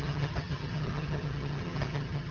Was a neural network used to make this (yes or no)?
yes